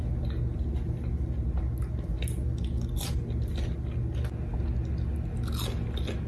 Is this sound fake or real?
real